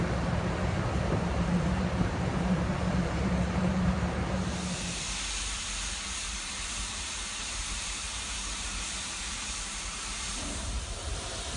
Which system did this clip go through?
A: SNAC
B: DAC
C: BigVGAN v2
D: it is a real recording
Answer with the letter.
C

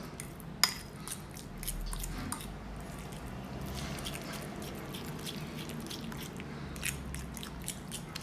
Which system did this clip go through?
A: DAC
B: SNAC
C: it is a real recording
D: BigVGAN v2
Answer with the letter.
C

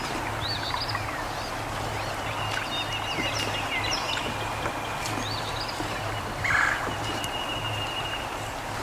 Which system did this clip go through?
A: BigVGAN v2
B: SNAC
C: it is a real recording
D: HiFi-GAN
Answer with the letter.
A